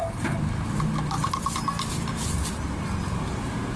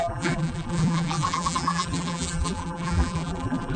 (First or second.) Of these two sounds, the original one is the first